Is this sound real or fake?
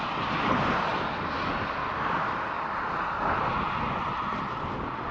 real